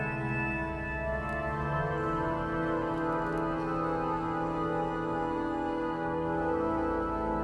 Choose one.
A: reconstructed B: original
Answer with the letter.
B